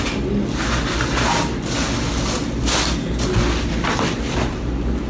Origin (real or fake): real